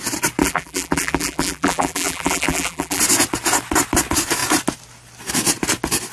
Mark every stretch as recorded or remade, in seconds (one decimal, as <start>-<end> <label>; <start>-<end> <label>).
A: 0.0-0.4 recorded; 0.4-3.0 remade; 3.0-6.1 recorded